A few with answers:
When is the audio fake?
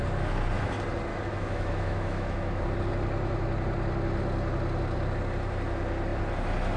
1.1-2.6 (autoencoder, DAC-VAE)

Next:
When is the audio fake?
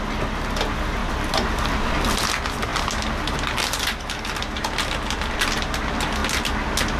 1.0-1.9 (vocoder, BigVGAN v2)